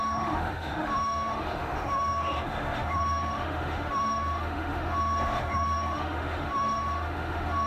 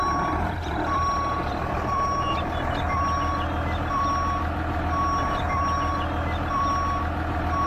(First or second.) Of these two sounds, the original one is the second